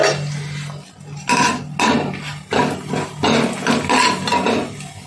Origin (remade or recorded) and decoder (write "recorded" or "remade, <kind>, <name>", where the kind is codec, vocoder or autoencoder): recorded